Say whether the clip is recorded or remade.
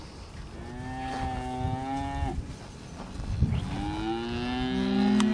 recorded